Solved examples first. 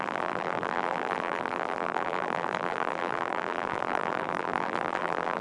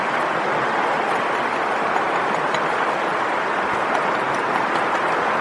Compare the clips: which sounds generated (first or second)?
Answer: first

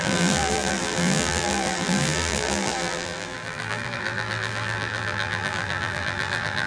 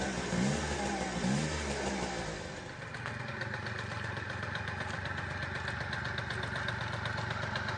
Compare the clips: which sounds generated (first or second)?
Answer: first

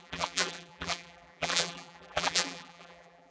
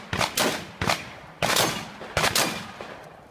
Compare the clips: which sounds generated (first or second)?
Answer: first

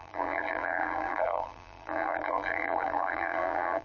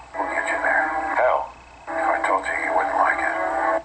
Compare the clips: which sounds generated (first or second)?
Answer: first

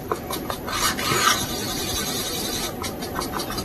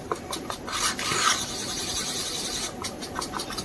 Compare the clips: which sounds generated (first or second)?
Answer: second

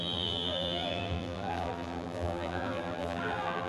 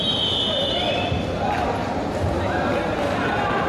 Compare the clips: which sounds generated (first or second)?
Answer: first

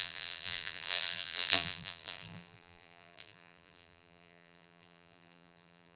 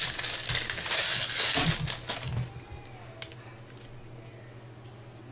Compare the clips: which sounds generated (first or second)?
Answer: first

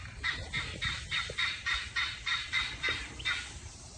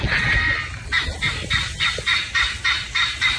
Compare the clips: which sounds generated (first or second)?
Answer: first